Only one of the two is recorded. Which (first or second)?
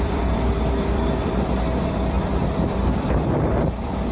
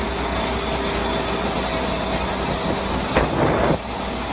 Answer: second